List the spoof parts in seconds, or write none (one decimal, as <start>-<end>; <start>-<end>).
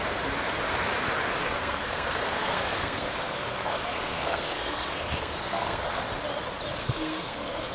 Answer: 1.4-6.0; 6.8-7.7